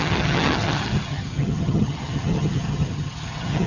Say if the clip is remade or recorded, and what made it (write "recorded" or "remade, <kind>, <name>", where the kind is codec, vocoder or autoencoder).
remade, vocoder, HiFi-GAN